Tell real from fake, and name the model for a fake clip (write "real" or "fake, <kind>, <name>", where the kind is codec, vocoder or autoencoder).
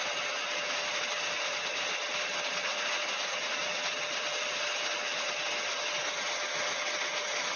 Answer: real